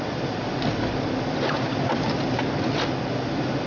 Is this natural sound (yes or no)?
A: yes